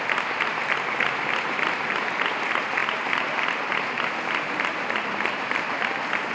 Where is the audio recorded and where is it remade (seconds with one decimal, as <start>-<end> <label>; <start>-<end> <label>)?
0.0-6.3 recorded